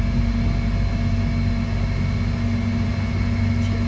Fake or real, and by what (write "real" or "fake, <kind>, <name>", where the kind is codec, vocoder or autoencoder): real